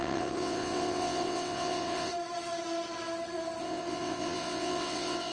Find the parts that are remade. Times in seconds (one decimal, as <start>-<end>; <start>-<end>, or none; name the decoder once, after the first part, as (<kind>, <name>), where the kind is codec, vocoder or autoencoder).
0.0-2.1 (vocoder, WaveNeXt); 3.6-5.3

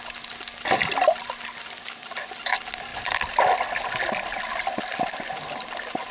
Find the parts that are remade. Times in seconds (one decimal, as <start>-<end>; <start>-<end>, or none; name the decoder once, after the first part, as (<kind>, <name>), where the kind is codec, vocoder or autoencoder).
none

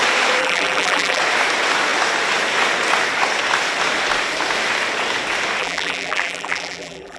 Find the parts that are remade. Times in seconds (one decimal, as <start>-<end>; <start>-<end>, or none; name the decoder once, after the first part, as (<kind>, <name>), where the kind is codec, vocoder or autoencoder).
0.4-1.2 (vocoder, BigVGAN v2); 5.6-7.2

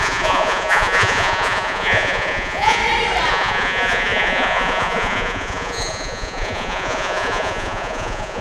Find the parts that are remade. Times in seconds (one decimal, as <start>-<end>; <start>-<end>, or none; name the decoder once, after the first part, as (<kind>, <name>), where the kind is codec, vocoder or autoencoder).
0.0-2.8 (vocoder, Vocos); 3.3-8.4

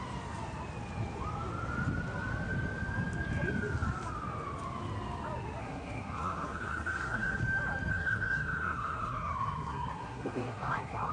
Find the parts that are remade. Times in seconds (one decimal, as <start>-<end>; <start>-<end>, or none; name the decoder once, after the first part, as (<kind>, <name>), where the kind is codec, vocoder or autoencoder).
5.6-7.4 (codec, SNAC); 7.9-11.1

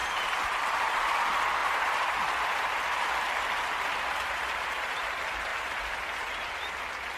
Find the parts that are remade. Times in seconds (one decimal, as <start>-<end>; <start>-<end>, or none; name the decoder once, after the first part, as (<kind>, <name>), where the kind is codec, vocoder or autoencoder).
0.0-1.2 (vocoder, BigVGAN v2); 1.6-3.1; 3.9-4.7; 5.5-6.7

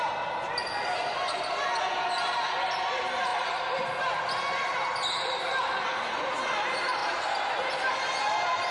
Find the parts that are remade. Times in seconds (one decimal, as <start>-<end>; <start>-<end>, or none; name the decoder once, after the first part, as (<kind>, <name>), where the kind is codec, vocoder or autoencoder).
none